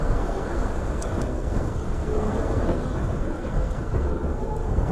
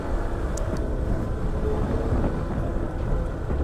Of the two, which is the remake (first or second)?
first